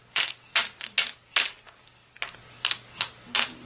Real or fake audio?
real